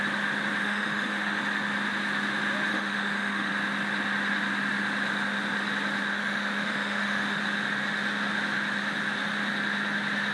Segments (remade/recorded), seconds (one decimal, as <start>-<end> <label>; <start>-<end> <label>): 0.0-0.6 recorded; 0.6-1.4 remade; 1.4-2.7 recorded; 2.7-3.5 remade; 3.5-6.1 recorded; 6.1-7.4 remade; 7.4-10.3 recorded